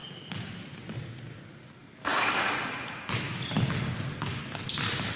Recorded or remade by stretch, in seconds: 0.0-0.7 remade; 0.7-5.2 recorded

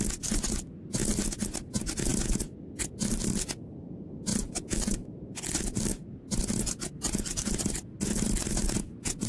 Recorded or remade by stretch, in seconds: 0.0-4.3 recorded; 4.3-5.4 remade; 5.4-9.3 recorded

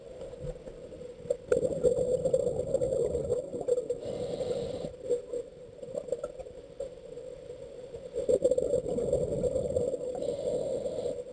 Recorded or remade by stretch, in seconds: 0.0-5.5 recorded; 5.5-6.1 remade; 6.1-11.3 recorded

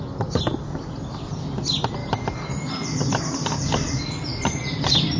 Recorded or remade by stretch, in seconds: 0.0-2.0 recorded; 2.0-3.3 remade; 3.3-4.3 recorded; 4.3-5.2 remade